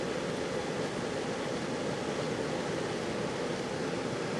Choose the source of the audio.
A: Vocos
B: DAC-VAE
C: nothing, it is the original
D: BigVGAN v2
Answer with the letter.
C